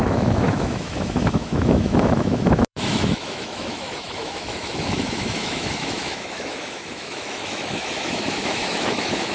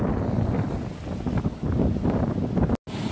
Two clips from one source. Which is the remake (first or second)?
first